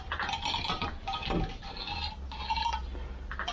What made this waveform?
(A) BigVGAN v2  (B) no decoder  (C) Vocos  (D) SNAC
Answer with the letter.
B